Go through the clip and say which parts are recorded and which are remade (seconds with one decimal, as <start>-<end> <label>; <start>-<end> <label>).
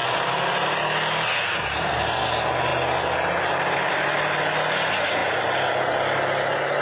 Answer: 0.0-6.8 recorded